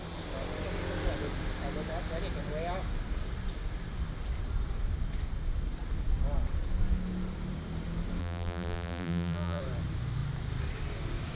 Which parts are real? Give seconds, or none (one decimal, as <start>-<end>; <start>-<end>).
0.0-8.2; 9.6-11.4

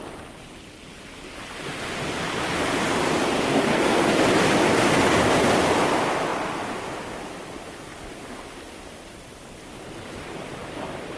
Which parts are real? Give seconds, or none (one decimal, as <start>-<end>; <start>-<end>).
0.0-3.7; 4.2-11.2